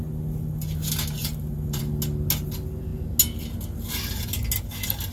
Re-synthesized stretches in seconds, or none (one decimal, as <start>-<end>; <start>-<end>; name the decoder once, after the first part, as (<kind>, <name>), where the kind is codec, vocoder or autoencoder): 1.2-1.8 (vocoder, BigVGAN v2)